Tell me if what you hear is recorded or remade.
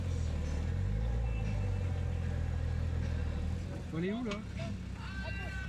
recorded